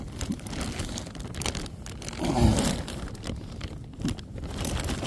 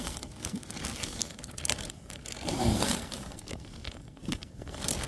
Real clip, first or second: first